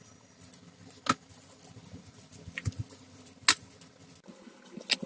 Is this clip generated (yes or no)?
no